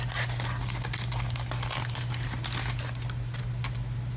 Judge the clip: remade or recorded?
recorded